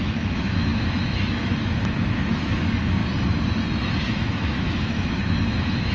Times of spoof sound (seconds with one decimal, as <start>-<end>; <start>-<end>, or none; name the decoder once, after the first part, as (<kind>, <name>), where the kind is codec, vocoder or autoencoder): 0.0-3.0 (autoencoder, DAC-VAE); 4.0-5.9